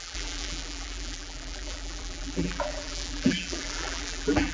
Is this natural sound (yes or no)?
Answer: no